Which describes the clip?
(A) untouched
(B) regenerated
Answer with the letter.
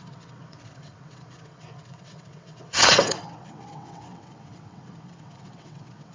B